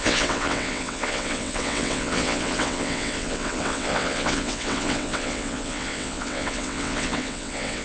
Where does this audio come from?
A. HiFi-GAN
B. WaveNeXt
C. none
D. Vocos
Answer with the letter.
B